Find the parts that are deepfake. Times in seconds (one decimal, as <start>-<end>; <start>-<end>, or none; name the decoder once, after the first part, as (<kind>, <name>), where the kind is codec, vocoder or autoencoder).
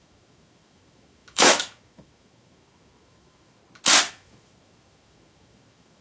0.0-3.6 (autoencoder, DAC-VAE); 4.1-6.0